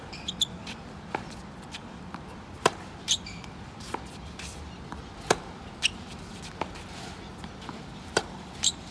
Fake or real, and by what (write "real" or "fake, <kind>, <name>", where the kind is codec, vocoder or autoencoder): fake, vocoder, BigVGAN v2